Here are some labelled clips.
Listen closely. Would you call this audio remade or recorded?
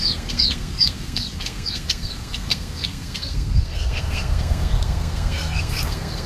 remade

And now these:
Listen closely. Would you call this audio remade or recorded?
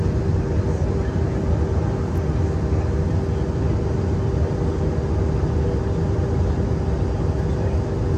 recorded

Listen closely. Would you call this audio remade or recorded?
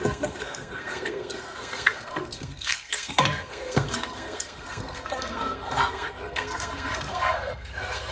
remade